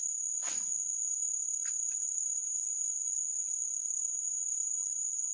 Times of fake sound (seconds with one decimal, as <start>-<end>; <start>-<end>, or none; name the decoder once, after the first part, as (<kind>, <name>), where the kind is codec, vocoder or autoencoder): none